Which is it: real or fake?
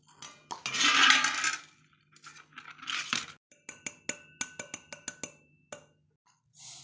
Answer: real